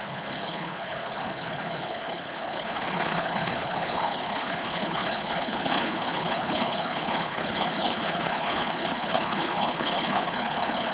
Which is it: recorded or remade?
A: remade